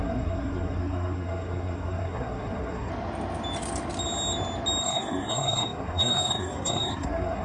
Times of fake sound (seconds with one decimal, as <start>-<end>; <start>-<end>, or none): 0.0-2.9; 4.8-7.4